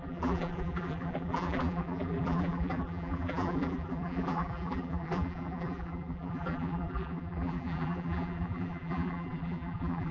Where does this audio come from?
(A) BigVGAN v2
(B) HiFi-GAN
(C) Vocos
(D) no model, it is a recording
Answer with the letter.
A